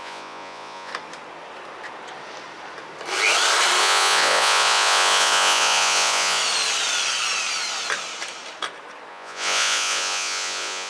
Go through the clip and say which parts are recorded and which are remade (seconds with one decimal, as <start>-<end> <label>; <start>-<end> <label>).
0.0-0.9 remade; 0.9-3.8 recorded; 3.8-6.4 remade; 6.4-9.1 recorded; 9.1-10.9 remade